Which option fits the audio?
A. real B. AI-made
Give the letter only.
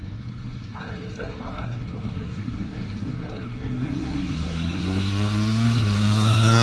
B